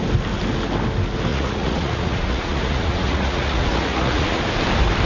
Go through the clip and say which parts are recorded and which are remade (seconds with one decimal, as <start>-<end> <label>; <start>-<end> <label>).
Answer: 0.0-1.3 recorded; 1.3-4.4 remade; 4.4-5.1 recorded